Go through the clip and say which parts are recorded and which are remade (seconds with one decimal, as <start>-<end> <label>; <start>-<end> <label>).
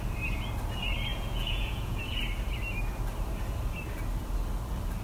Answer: 0.0-1.1 recorded; 1.1-2.2 remade; 2.2-5.0 recorded